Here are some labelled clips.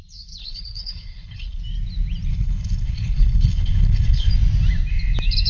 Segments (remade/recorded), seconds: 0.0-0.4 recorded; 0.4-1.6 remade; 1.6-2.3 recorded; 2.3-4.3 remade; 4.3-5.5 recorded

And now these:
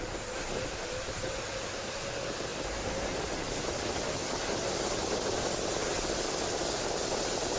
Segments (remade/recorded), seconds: 0.0-7.6 recorded